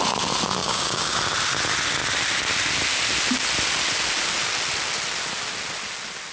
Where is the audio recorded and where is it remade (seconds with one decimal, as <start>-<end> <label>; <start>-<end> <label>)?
0.0-0.6 recorded; 0.6-1.2 remade; 1.2-6.3 recorded